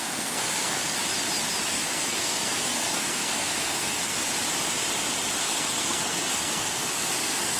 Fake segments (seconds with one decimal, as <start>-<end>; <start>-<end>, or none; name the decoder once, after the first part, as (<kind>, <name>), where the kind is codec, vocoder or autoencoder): 0.0-1.0 (codec, SNAC); 1.7-4.2; 5.4-7.6